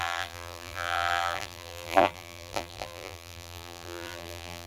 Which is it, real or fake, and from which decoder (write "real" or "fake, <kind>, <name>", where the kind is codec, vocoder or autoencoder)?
fake, vocoder, BigVGAN v2